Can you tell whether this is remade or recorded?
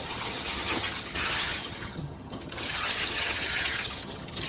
remade